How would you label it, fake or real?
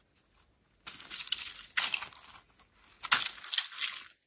real